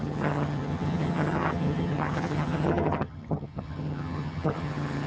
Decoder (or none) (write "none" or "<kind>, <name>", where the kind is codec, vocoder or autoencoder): vocoder, HiFi-GAN